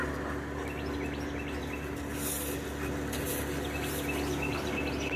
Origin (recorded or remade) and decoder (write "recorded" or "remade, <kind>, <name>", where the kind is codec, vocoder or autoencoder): recorded